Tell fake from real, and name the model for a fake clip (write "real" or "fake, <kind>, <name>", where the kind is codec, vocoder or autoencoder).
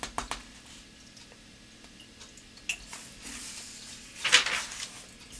real